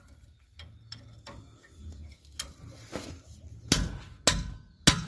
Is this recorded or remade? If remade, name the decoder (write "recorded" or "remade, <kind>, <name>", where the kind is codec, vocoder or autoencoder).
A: recorded